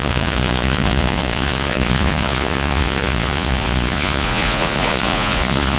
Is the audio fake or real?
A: fake